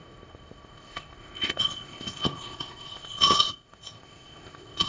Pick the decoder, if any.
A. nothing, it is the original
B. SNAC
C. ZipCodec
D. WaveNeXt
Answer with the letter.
C